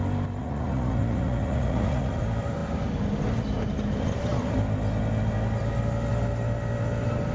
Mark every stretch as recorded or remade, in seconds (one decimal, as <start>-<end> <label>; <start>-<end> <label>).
0.0-0.4 recorded; 0.4-2.2 remade; 2.2-7.3 recorded